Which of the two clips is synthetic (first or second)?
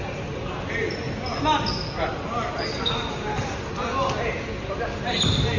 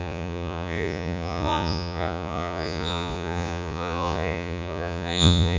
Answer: second